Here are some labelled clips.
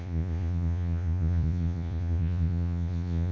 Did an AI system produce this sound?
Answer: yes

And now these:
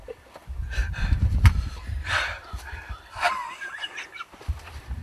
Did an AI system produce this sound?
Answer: yes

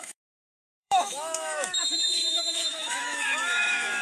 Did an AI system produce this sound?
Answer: yes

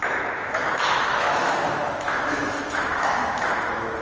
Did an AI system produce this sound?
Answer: yes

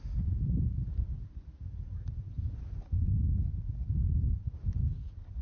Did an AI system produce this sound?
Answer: no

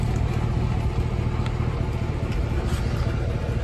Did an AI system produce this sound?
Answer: no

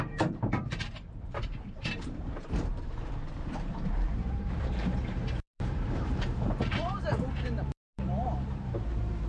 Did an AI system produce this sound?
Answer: yes